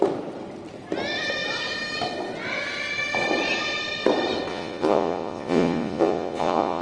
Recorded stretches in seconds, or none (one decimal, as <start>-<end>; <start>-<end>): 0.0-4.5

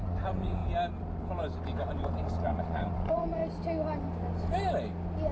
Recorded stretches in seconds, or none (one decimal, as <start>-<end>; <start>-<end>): 0.6-2.3; 3.4-5.3

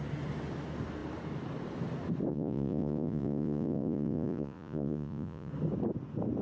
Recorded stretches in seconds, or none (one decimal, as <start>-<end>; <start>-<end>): 0.0-2.3; 5.5-6.4

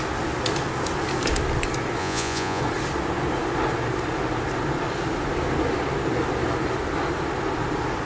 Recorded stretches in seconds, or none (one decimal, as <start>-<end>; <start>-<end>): 0.0-2.0; 2.6-8.1

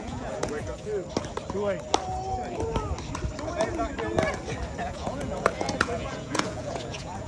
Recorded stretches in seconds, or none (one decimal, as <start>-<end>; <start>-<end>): 0.9-4.8

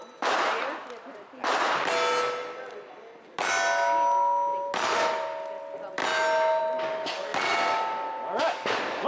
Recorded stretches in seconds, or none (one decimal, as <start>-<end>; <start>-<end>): 0.0-9.1

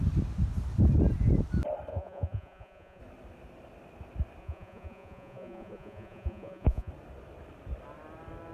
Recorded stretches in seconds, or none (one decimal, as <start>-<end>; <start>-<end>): 0.0-1.9; 3.0-4.4; 6.9-8.5